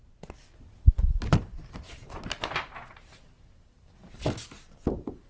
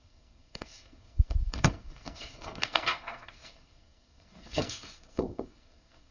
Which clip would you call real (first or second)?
first